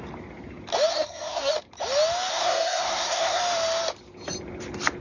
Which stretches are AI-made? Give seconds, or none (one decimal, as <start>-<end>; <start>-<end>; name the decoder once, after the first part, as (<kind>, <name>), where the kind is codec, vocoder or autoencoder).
0.9-1.5 (codec, SNAC); 2.3-3.4